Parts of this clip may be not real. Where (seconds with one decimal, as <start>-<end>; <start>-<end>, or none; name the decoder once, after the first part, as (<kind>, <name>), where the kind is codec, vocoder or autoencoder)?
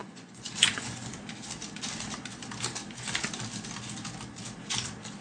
0.0-1.2 (vocoder, Vocos)